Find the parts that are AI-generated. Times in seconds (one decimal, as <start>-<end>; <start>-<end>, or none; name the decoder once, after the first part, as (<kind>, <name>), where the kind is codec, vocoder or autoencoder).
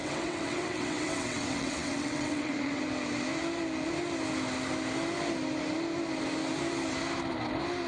0.0-2.8 (vocoder, WaveNeXt)